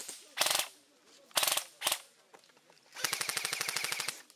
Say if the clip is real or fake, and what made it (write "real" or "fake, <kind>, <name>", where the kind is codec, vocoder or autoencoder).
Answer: real